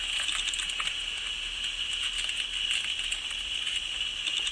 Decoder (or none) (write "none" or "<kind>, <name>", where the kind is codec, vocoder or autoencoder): none